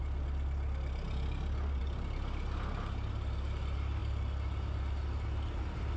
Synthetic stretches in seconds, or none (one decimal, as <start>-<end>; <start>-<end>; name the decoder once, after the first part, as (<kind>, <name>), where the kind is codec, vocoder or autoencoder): none